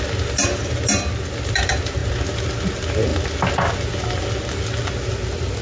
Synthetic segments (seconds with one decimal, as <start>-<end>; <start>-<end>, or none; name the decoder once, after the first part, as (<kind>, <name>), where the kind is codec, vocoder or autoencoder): none